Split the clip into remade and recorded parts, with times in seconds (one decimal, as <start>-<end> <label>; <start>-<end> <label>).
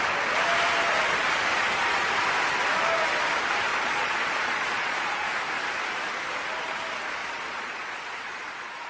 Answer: 0.0-3.7 recorded; 3.7-5.3 remade; 5.3-7.2 recorded; 7.2-8.9 remade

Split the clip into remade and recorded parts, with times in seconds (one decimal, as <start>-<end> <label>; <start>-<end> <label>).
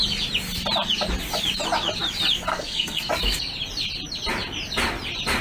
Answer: 0.0-2.5 recorded; 2.5-3.1 remade; 3.1-5.4 recorded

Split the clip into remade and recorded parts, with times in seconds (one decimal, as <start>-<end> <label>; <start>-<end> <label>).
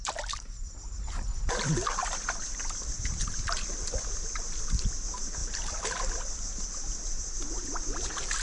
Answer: 0.0-8.4 recorded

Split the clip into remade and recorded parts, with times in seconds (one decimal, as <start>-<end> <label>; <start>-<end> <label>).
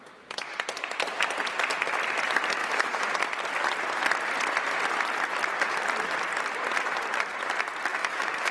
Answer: 0.0-2.6 recorded; 2.6-3.1 remade; 3.1-7.9 recorded; 7.9-8.5 remade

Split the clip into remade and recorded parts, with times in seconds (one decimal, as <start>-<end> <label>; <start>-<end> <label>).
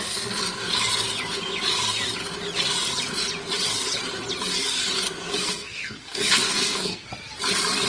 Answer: 0.0-5.4 recorded; 5.4-7.1 remade; 7.1-7.9 recorded